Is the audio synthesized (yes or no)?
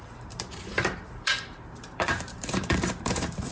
yes